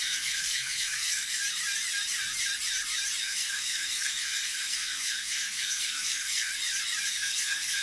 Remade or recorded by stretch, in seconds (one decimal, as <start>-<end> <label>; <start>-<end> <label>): 0.0-1.4 remade; 1.4-3.2 recorded; 3.2-6.5 remade; 6.5-7.1 recorded; 7.1-7.8 remade